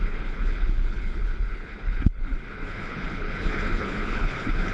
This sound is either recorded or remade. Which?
remade